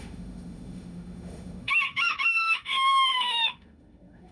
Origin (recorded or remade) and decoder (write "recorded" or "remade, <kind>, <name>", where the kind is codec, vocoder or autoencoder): remade, autoencoder, DAC-VAE